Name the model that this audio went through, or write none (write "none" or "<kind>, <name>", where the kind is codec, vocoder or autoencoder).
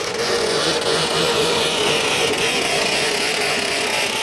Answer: vocoder, Vocos